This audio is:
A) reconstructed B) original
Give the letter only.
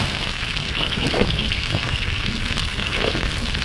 A